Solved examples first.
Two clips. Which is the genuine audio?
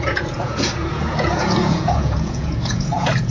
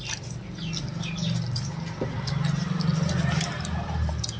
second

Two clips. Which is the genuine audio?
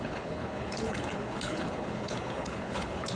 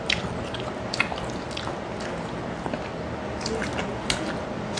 second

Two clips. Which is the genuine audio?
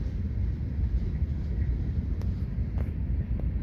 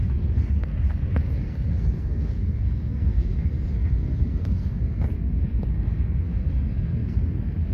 first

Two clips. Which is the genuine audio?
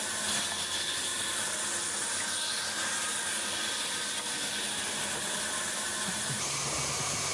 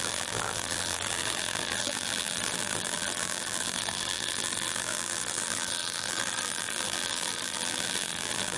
first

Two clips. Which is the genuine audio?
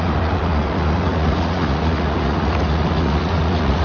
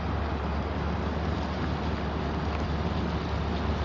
second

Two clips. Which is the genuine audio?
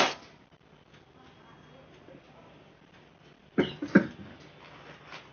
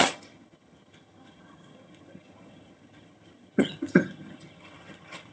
first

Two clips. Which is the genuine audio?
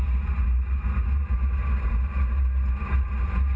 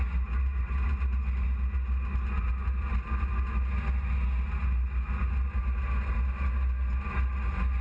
second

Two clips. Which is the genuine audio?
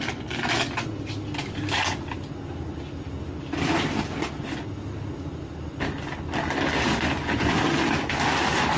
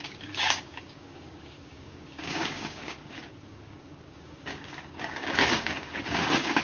first